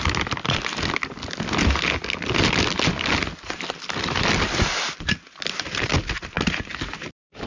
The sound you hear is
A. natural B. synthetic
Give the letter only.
A